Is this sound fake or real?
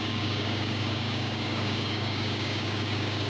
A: fake